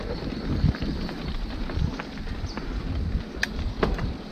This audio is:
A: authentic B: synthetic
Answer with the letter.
B